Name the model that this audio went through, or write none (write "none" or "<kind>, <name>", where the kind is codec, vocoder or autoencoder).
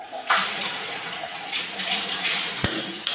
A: vocoder, Vocos